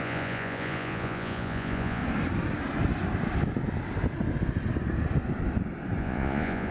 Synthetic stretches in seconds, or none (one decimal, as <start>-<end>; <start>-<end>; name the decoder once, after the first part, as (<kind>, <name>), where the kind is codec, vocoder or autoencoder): 0.0-2.0 (vocoder, Vocos); 6.0-6.7